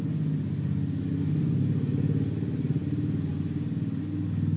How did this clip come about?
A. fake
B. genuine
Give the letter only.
B